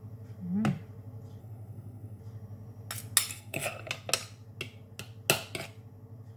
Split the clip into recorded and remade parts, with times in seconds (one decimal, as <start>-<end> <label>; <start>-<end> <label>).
0.0-1.4 recorded; 1.4-2.2 remade; 2.2-3.3 recorded; 3.3-3.9 remade; 3.9-6.4 recorded